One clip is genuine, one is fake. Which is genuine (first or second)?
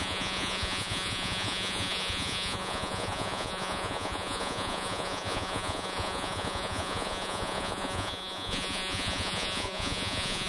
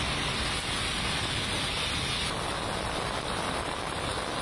second